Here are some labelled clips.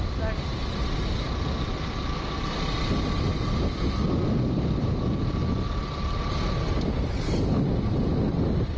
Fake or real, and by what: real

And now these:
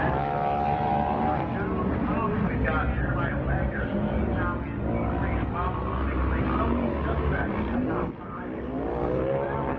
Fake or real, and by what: real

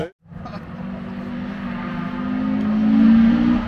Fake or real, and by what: real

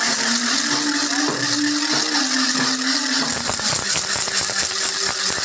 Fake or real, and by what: real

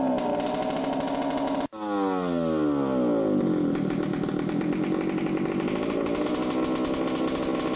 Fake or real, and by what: real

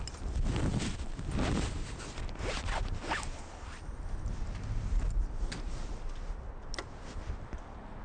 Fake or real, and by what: real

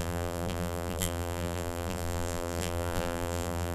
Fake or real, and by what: fake, vocoder, BigVGAN v2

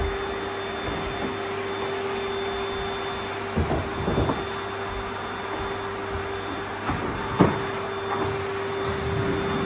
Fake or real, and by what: real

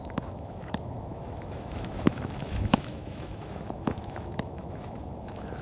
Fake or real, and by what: fake, autoencoder, DAC-VAE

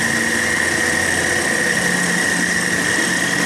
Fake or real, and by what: real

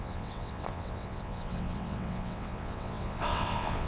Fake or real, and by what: fake, vocoder, WaveNeXt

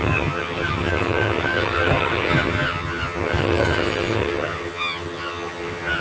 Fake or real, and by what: fake, vocoder, HiFi-GAN